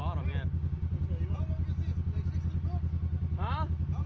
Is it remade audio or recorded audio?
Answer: recorded